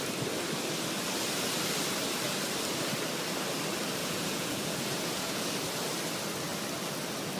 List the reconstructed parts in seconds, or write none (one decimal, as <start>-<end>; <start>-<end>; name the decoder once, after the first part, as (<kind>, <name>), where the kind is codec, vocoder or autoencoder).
4.0-5.5 (vocoder, Vocos)